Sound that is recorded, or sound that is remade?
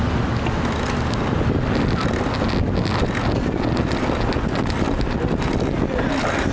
recorded